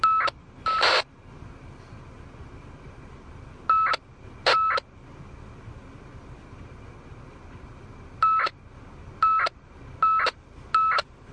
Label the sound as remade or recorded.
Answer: recorded